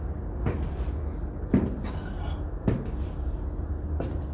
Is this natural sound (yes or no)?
yes